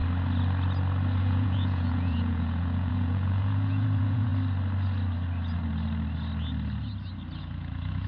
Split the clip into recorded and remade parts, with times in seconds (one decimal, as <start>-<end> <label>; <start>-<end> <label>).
0.0-1.2 recorded; 1.2-4.3 remade; 4.3-7.4 recorded; 7.4-8.1 remade